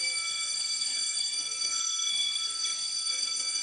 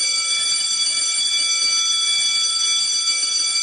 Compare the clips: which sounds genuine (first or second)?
second